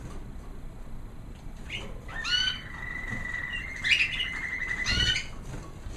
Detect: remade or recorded recorded